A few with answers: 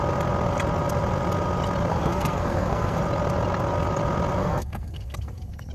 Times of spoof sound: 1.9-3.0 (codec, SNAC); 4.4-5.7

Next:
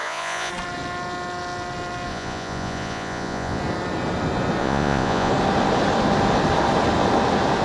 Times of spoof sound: 0.0-0.5 (vocoder, Vocos); 2.1-3.6; 4.6-5.3

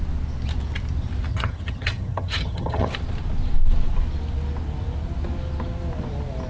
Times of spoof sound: 1.3-2.9 (vocoder, HiFi-GAN)

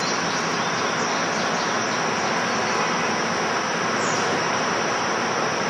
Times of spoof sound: 4.1-5.0 (vocoder, BigVGAN v2)

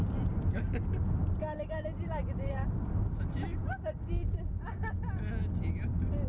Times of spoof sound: 2.2-3.0 (vocoder, BigVGAN v2)

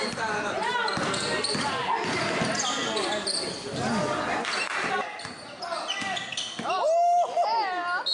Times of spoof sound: none